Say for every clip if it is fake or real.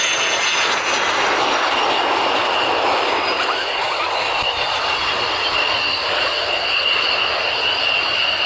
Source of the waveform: real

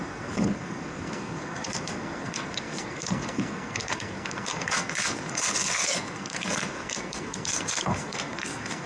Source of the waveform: fake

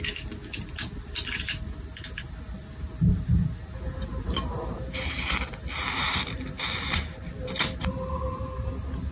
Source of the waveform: real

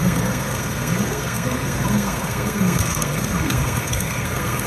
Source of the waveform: fake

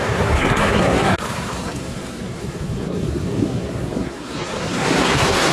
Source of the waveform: fake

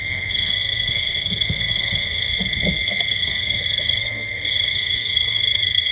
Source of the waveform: fake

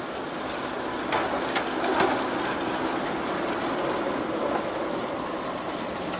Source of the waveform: real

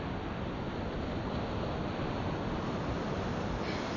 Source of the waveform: real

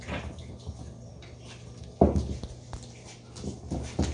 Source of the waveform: real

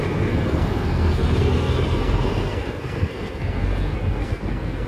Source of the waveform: fake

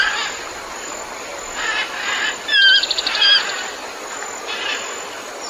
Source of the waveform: real